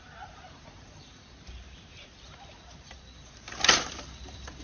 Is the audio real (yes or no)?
no